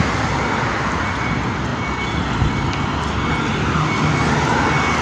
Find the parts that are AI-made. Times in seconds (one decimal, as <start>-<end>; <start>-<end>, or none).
none